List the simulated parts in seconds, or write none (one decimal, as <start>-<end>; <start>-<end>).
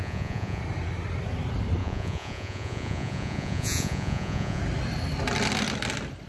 0.0-0.6; 1.8-4.6